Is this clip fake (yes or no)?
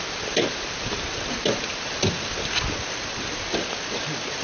no